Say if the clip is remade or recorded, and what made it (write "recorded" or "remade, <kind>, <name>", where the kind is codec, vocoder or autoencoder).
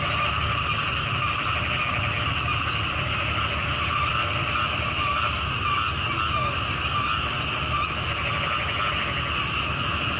recorded